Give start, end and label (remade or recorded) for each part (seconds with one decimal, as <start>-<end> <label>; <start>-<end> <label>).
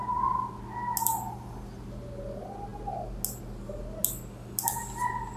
0.0-5.4 recorded